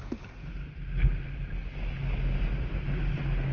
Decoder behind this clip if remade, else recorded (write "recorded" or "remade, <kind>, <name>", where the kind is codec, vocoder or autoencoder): recorded